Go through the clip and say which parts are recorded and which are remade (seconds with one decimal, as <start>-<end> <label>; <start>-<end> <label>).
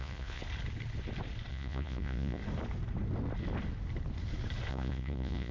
0.0-0.4 remade; 0.4-1.5 recorded; 1.5-2.4 remade; 2.4-4.7 recorded; 4.7-5.5 remade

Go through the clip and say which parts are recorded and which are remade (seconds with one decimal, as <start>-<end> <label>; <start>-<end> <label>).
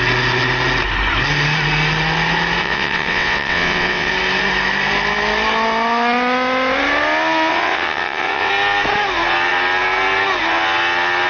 0.0-2.6 recorded; 2.6-4.1 remade; 4.1-7.5 recorded; 7.5-8.5 remade; 8.5-11.3 recorded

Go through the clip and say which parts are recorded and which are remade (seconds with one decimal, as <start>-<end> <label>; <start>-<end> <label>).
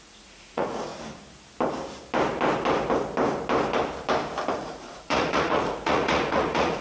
0.0-0.9 remade; 0.9-4.5 recorded; 4.5-6.8 remade